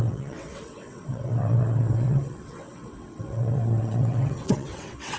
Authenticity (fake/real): fake